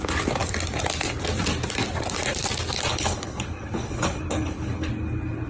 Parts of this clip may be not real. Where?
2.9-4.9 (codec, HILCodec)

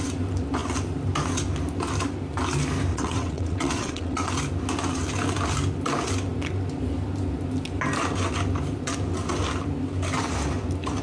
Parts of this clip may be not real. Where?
2.9-4.3 (vocoder, WaveNeXt)

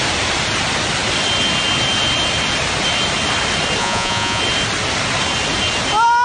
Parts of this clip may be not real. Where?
3.8-4.4 (vocoder, Vocos)

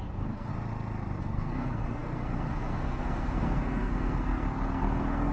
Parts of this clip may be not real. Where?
0.0-0.5 (codec, SNAC); 1.2-5.3

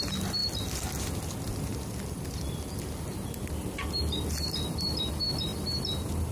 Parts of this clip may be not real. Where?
none